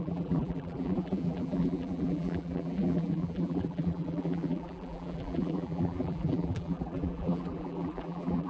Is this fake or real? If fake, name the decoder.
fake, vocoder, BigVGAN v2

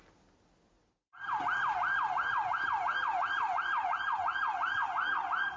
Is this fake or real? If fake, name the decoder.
real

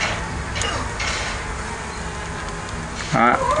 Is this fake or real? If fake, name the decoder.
real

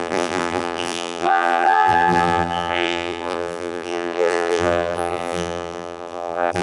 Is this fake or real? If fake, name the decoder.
fake, vocoder, BigVGAN v2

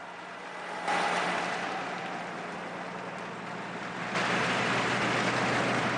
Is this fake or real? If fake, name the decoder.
real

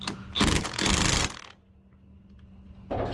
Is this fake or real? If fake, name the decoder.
real